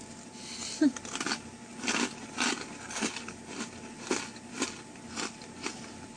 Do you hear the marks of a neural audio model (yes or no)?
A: no